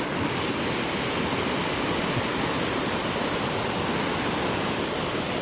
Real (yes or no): yes